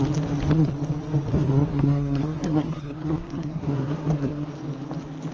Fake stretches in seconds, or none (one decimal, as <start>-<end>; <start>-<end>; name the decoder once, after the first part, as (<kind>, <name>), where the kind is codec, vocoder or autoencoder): 1.3-4.5 (codec, SNAC)